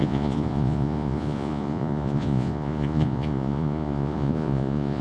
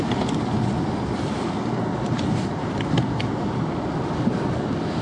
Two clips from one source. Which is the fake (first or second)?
first